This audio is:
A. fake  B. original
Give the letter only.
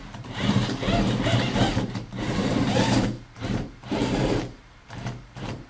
A